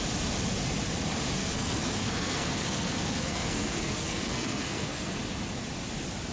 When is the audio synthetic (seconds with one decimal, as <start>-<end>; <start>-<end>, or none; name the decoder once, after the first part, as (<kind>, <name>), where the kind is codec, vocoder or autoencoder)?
1.4-5.2 (codec, SNAC)